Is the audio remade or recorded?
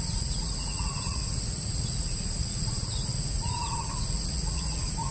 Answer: remade